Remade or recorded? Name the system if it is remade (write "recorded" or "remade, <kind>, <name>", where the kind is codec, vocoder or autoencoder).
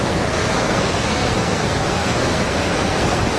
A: remade, codec, SNAC